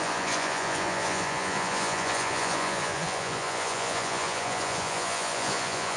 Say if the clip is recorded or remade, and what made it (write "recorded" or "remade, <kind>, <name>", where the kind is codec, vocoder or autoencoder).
remade, vocoder, Vocos